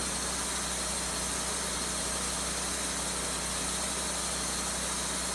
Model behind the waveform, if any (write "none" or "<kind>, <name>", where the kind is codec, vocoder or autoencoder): none